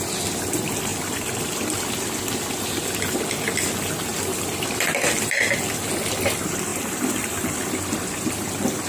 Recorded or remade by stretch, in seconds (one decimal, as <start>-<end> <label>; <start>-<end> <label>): 0.0-0.9 recorded; 0.9-1.4 remade; 1.4-4.1 recorded; 4.1-5.4 remade; 5.4-6.7 recorded; 6.7-8.9 remade